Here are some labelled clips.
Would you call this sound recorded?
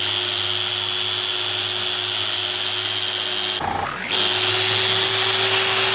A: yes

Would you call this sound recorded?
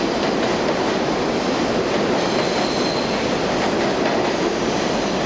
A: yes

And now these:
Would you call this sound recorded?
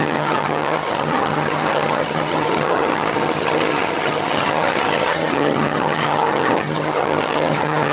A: no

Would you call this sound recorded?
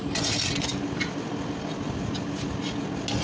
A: yes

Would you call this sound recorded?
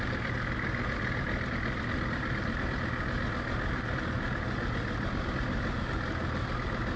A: yes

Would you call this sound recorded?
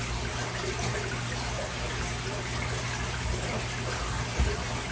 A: yes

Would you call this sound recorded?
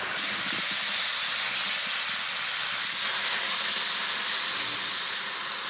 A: yes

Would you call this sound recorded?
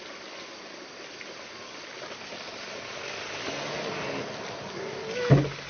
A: yes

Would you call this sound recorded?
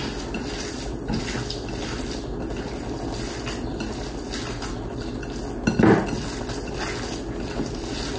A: yes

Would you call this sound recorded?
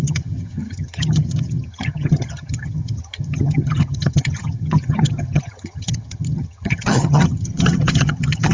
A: no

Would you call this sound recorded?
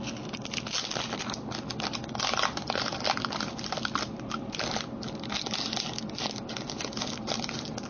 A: yes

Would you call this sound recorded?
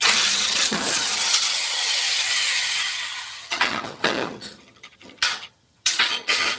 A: no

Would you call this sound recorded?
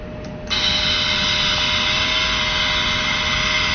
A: yes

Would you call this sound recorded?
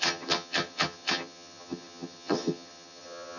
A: no